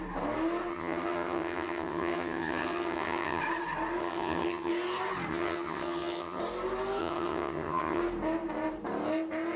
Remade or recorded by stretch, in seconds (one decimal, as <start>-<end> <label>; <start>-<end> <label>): 0.0-0.7 recorded; 0.7-3.4 remade; 3.4-4.0 recorded; 4.0-4.7 remade; 4.7-5.3 recorded; 5.3-6.4 remade; 6.4-7.0 recorded; 7.0-8.0 remade; 8.0-9.6 recorded

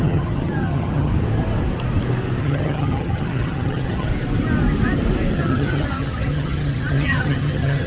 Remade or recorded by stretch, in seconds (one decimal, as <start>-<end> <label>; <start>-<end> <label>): 0.0-1.1 remade; 1.1-2.4 recorded; 2.4-4.1 remade; 4.1-5.3 recorded; 5.3-7.9 remade

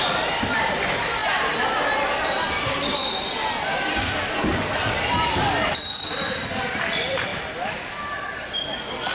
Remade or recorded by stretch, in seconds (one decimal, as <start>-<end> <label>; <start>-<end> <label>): 0.0-9.1 recorded

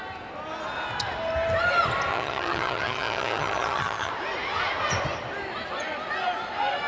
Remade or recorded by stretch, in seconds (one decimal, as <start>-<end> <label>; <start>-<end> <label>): 0.0-2.1 recorded; 2.1-4.1 remade; 4.1-6.9 recorded

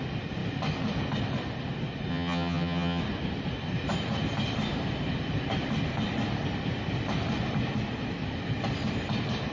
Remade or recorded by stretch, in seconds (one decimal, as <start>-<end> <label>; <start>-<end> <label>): 0.0-2.1 recorded; 2.1-3.0 remade; 3.0-9.5 recorded

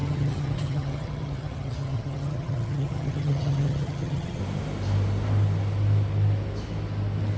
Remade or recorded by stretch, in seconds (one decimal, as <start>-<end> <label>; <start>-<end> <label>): 0.0-4.4 remade; 4.4-7.4 recorded